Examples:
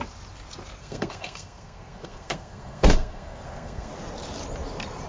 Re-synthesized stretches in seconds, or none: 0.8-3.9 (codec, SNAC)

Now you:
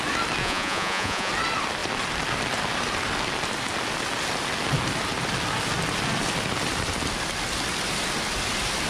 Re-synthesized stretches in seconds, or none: 0.4-1.3 (vocoder, Vocos)

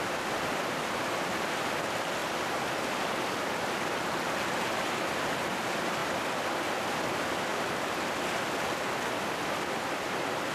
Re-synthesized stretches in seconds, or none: 2.2-4.6 (vocoder, BigVGAN v2); 7.5-8.1